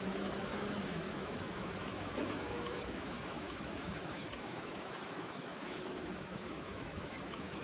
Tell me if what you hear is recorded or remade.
remade